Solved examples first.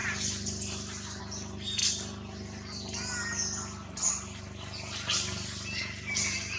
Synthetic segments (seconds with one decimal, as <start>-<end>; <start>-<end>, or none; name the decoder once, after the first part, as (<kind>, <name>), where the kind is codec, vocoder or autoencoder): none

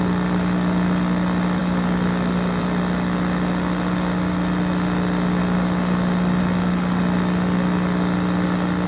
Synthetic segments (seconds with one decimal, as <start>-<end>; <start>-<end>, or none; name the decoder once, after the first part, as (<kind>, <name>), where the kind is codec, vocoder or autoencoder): none

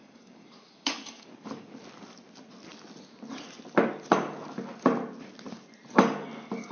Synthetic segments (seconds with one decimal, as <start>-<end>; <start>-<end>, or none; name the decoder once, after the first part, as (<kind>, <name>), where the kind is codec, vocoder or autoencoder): 0.0-1.3 (codec, DAC)

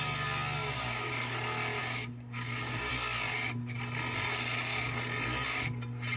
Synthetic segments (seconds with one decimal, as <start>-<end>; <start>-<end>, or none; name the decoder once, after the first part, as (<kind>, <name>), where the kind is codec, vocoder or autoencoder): 0.6-1.1 (codec, DAC); 1.8-2.9

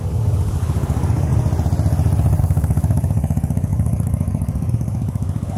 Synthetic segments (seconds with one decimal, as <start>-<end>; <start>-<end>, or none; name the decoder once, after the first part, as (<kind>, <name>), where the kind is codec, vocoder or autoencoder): 0.0-1.3 (codec, DAC); 2.4-5.6